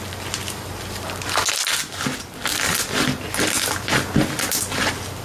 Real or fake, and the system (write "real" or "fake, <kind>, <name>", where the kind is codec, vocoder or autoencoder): real